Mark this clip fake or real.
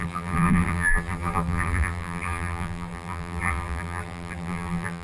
fake